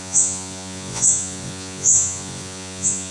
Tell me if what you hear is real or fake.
fake